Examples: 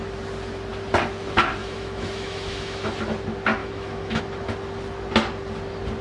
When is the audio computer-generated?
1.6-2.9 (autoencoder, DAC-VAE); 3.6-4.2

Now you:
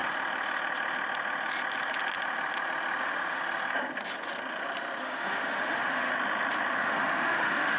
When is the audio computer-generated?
3.0-3.4 (autoencoder, DAC-VAE); 5.0-6.1; 6.7-7.8